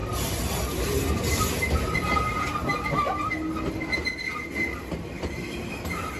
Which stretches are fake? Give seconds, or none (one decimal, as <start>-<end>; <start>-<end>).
none